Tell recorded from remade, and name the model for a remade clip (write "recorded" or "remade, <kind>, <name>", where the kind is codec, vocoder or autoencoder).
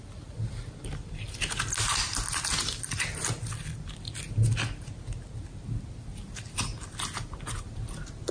recorded